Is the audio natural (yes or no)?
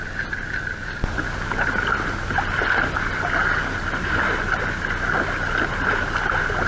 yes